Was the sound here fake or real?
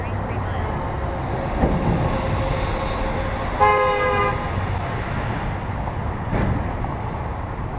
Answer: real